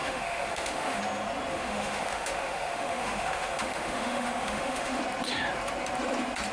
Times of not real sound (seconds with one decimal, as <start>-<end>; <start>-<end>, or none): 0.0-1.0; 1.5-5.0

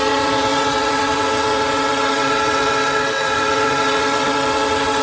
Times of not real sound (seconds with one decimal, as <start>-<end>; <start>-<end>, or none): 0.0-5.0

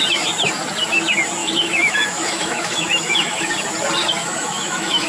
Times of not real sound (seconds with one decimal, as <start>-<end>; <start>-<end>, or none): 1.4-3.5; 4.2-5.1

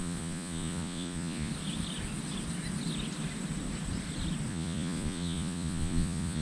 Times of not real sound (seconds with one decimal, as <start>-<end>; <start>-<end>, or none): 0.0-1.5; 4.5-6.4

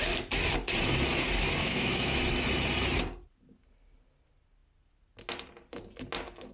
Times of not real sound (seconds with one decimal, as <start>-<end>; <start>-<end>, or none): 1.6-2.2